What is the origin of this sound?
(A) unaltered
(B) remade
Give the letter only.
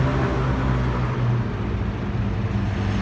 A